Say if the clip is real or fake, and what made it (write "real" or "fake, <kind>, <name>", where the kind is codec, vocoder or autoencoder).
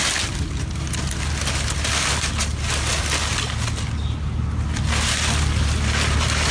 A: real